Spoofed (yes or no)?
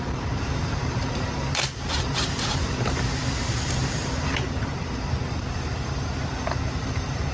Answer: yes